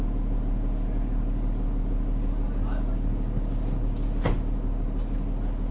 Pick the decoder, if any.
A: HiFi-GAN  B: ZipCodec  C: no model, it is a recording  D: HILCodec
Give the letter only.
C